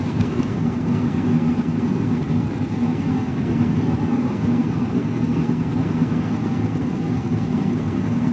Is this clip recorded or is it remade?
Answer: remade